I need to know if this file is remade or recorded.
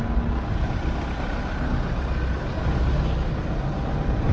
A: recorded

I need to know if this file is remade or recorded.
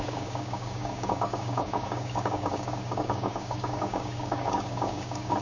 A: remade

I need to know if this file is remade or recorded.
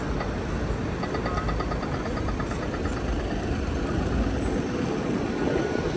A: recorded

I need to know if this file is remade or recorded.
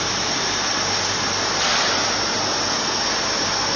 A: recorded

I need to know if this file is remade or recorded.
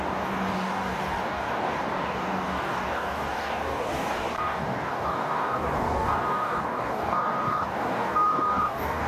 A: remade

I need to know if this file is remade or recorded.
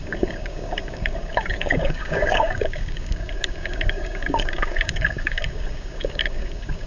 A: remade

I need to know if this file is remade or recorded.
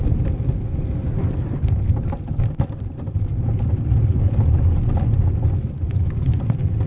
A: recorded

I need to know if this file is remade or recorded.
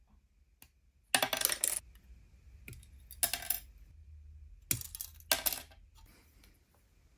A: recorded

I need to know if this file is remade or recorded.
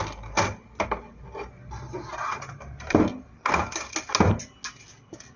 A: recorded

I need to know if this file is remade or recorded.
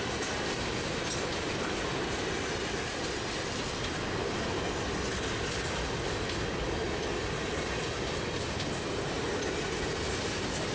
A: recorded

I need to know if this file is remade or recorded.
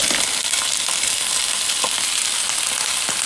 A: recorded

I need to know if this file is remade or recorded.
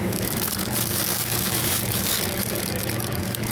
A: remade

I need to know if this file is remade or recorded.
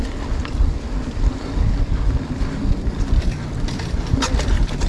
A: recorded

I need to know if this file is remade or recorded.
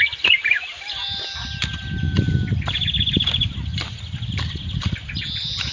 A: recorded